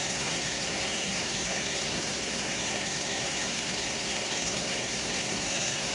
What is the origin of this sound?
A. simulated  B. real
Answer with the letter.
A